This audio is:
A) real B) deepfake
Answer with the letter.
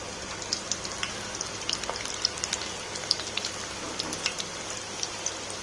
A